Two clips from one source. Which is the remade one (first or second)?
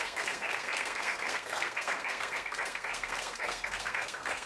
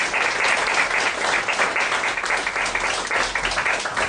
first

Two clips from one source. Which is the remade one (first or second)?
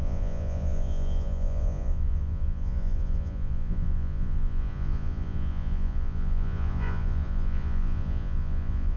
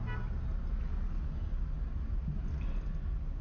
first